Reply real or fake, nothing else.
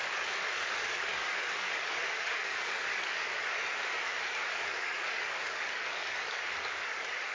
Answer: fake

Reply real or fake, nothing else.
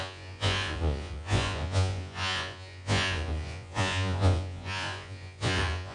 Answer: fake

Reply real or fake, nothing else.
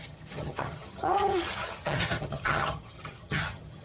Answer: fake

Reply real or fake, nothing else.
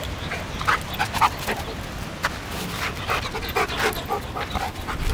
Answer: real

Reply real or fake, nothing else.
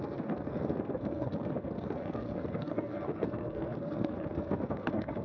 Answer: fake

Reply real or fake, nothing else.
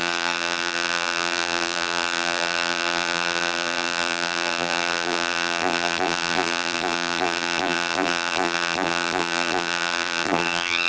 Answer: fake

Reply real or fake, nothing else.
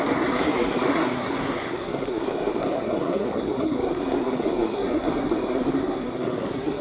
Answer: fake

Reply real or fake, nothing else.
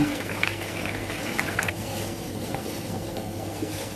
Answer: fake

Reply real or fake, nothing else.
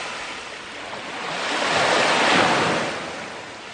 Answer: real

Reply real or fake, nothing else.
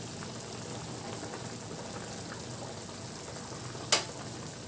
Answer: real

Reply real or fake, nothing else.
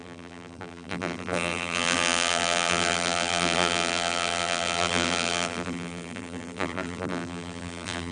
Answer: fake